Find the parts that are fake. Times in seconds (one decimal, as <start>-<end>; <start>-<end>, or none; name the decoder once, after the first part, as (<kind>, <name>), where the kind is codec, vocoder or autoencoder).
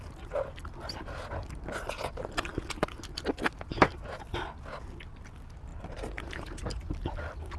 5.7-6.8 (vocoder, BigVGAN v2)